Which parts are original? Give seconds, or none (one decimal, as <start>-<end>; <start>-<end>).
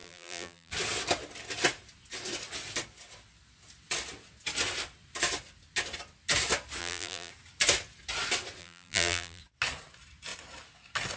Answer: 0.7-6.8; 7.3-8.6; 9.4-11.2